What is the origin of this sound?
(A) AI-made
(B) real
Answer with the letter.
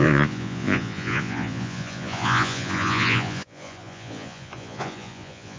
A